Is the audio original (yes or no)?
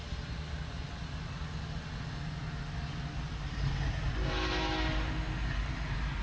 yes